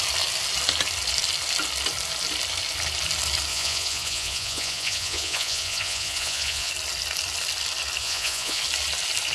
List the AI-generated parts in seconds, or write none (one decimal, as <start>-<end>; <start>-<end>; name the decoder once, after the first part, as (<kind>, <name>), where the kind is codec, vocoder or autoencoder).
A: 3.5-6.7 (vocoder, Vocos); 8.0-8.6